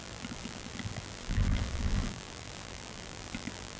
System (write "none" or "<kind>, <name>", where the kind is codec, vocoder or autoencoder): vocoder, BigVGAN v2